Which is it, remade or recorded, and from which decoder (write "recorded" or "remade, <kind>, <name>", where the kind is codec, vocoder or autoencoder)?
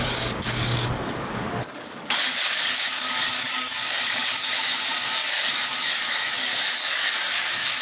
remade, codec, DAC